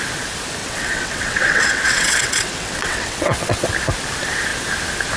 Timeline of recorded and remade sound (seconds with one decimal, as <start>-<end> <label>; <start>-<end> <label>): 0.0-0.6 recorded; 0.6-3.7 remade; 3.7-5.2 recorded